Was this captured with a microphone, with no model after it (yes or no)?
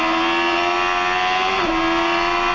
yes